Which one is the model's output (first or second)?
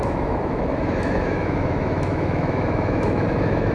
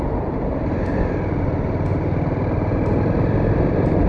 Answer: first